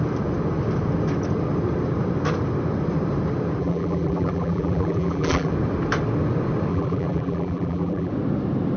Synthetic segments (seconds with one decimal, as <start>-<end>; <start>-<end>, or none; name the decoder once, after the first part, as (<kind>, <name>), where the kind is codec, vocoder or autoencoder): 3.6-5.5 (vocoder, BigVGAN v2); 6.7-8.1